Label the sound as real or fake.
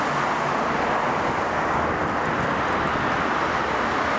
real